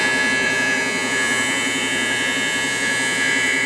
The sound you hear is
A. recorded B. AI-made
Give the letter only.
B